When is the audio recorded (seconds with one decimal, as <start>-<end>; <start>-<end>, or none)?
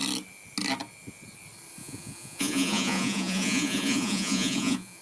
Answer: 0.0-1.8